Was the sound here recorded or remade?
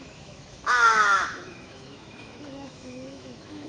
remade